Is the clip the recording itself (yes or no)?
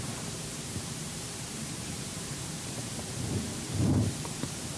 no